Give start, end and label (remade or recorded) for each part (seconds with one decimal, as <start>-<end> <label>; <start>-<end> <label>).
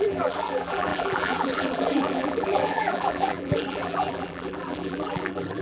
0.0-5.6 remade